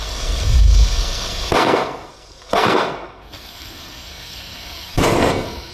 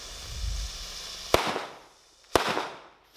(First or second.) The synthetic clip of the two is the first